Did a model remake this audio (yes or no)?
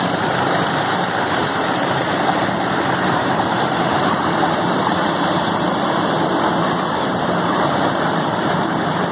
yes